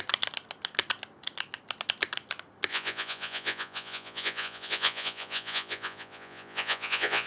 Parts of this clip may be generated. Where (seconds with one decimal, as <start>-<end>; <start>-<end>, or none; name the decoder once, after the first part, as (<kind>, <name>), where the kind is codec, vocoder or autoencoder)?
2.7-7.3 (vocoder, Vocos)